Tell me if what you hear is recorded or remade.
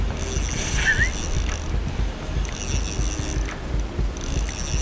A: recorded